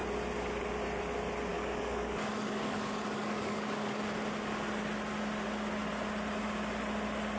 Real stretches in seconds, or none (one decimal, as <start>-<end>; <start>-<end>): 0.0-1.5; 4.0-7.4